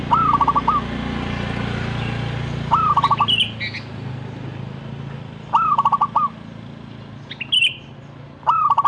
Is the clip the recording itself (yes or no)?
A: yes